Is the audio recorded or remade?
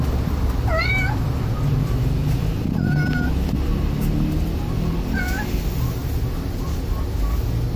recorded